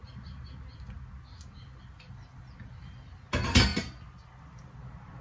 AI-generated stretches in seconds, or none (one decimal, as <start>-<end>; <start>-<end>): none